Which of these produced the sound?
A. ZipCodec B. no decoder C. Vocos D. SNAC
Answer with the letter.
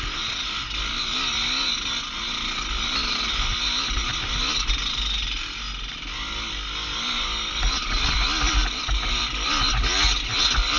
B